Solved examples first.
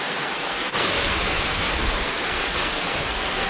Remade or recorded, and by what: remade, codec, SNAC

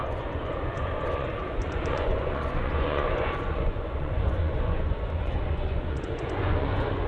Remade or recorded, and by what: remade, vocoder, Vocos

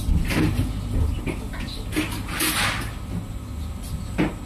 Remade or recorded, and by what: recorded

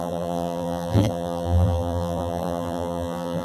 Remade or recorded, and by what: remade, vocoder, BigVGAN v2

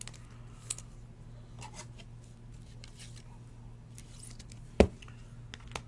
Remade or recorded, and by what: recorded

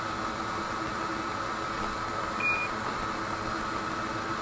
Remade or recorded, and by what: recorded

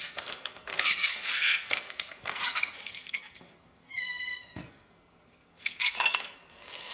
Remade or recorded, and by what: remade, codec, SNAC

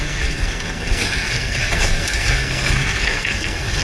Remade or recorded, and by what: remade, codec, SNAC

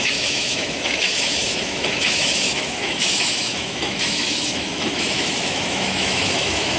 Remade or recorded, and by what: remade, autoencoder, DAC-VAE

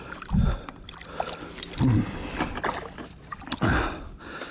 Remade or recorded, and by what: recorded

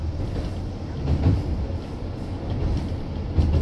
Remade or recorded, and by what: recorded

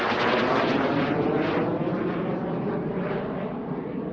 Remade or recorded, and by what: recorded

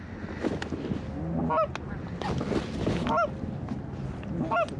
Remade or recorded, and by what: recorded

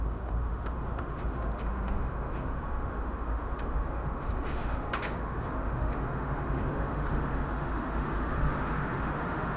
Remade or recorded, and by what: remade, autoencoder, DAC-VAE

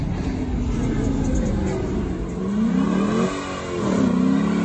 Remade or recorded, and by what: recorded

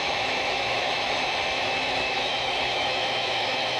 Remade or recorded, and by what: remade, autoencoder, DAC-VAE